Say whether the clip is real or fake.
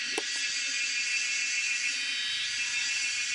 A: real